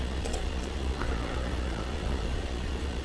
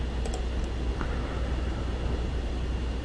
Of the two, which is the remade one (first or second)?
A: first